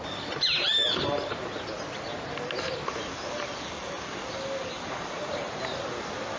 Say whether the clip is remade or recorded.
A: recorded